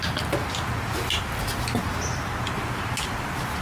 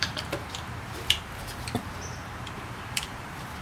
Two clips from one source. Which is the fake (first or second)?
second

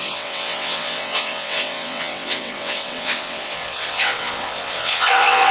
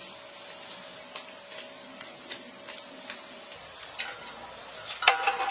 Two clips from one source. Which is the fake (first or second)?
first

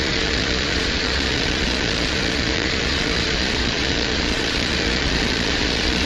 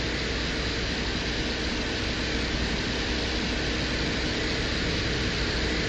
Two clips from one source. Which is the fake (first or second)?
first